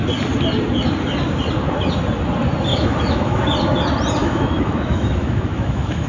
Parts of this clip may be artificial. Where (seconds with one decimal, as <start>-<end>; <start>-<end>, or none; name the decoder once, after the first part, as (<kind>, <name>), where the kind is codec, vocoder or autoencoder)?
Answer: 2.7-3.4 (autoencoder, DAC-VAE); 4.2-6.1